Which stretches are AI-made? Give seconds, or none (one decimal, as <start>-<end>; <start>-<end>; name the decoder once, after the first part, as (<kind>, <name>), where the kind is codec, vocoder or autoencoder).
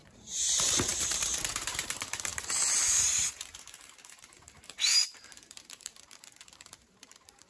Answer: 0.0-7.5 (vocoder, BigVGAN v2)